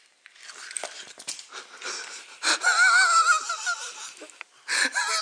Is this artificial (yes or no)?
no